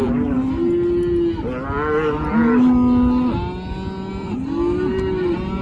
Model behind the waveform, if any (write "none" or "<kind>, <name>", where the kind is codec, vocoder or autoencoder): none